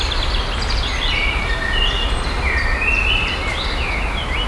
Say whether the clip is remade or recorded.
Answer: recorded